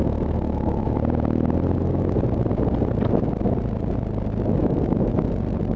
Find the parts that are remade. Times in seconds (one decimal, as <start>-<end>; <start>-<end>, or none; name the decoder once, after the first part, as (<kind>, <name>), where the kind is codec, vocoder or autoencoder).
0.0-0.9 (autoencoder, DAC-VAE); 4.6-5.3